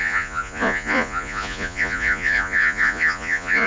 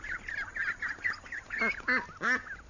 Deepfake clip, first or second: first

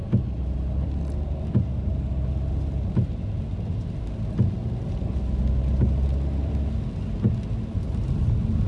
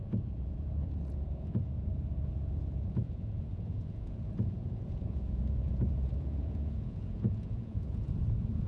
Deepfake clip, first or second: second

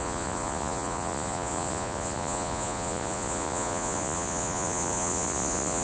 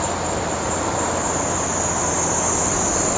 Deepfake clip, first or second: first